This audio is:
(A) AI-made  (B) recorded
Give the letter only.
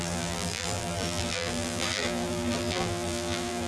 A